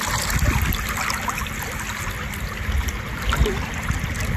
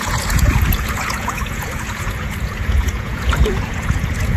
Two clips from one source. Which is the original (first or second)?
first